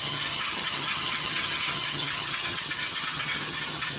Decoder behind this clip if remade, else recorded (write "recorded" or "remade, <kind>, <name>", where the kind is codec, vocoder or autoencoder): remade, vocoder, HiFi-GAN